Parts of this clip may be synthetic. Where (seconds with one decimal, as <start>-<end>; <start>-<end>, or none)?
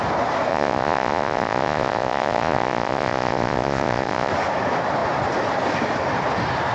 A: 0.5-4.3